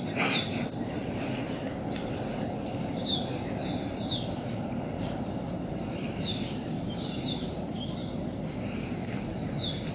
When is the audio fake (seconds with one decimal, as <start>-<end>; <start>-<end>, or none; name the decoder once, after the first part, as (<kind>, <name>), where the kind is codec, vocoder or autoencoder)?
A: 0.0-0.6 (vocoder, BigVGAN v2); 5.7-8.0